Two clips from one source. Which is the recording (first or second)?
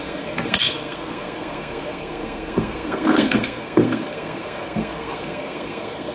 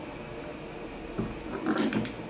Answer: second